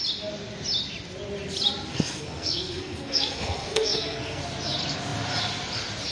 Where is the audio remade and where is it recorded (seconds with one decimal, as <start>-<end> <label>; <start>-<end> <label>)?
0.0-1.9 recorded; 1.9-4.4 remade; 4.4-6.1 recorded